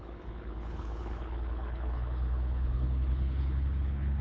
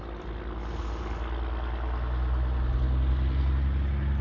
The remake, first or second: first